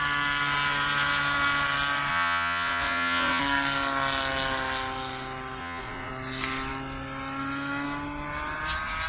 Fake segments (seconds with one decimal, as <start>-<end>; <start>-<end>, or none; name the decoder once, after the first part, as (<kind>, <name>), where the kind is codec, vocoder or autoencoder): 2.1-3.4 (vocoder, Vocos); 5.6-6.1